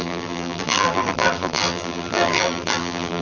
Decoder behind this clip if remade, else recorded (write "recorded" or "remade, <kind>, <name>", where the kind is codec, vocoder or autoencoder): remade, vocoder, BigVGAN v2